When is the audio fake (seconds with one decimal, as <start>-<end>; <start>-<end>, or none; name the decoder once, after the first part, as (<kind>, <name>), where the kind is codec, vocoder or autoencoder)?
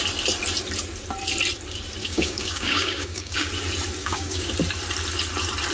2.0-3.5 (codec, DAC); 4.0-4.5